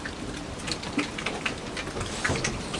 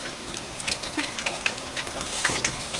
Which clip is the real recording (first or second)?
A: first